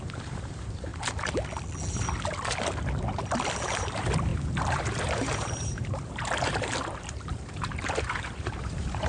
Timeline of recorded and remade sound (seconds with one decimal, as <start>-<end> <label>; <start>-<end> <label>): 0.0-0.9 remade; 0.9-3.7 recorded; 3.7-9.1 remade